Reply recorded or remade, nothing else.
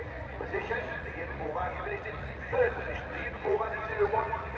remade